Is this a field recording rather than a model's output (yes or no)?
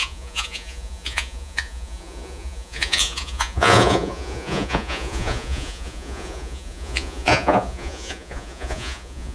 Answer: no